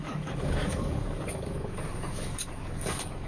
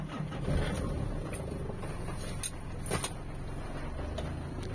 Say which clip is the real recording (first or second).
second